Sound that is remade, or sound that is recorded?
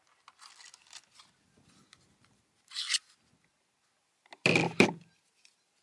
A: recorded